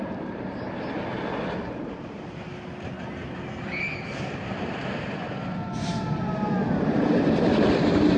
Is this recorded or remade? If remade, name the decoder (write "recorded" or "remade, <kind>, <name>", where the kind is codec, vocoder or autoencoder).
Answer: recorded